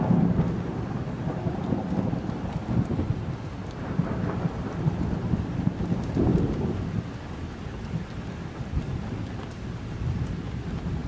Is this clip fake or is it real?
real